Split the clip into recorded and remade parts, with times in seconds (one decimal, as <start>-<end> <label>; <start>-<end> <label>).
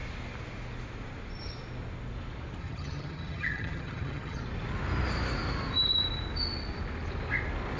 0.0-2.6 recorded; 2.6-4.4 remade; 4.4-7.8 recorded